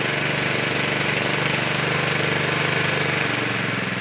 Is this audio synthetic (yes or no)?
no